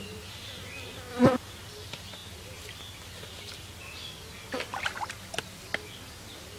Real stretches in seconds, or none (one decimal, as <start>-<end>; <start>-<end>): 0.0-6.6